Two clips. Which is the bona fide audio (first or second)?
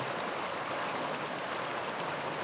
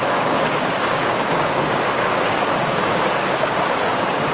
first